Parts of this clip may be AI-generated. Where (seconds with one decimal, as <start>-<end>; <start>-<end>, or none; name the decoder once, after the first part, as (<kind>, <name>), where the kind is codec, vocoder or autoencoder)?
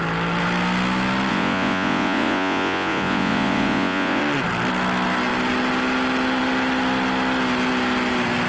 1.3-4.2 (vocoder, Vocos)